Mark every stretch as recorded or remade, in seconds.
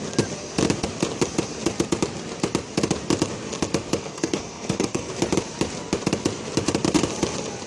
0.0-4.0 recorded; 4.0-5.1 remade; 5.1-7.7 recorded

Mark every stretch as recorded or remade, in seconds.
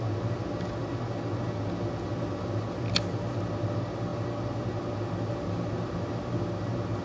0.0-7.0 recorded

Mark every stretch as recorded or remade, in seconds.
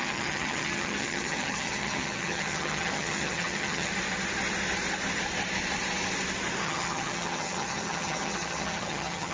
0.0-3.9 remade; 3.9-6.6 recorded; 6.6-9.3 remade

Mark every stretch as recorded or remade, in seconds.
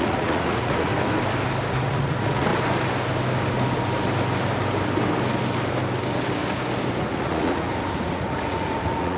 0.0-0.9 remade; 0.9-1.7 recorded; 1.7-2.5 remade; 2.5-7.0 recorded; 7.0-9.2 remade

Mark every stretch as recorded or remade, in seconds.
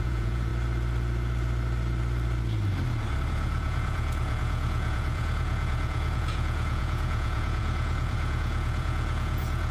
0.0-0.5 remade; 0.5-3.3 recorded; 3.3-9.7 remade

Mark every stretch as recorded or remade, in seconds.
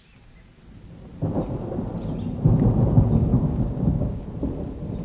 0.0-3.3 recorded; 3.3-4.2 remade; 4.2-5.0 recorded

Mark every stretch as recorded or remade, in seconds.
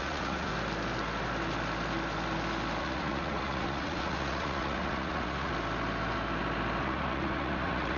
0.0-0.5 remade; 0.5-2.8 recorded; 2.8-5.5 remade; 5.5-6.8 recorded; 6.8-8.0 remade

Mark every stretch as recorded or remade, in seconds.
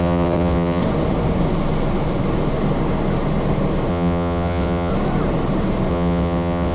0.0-0.8 remade; 0.8-3.9 recorded; 3.9-4.9 remade; 4.9-5.9 recorded; 5.9-6.7 remade